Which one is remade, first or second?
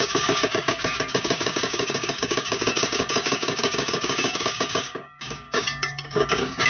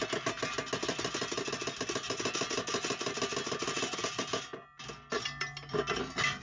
first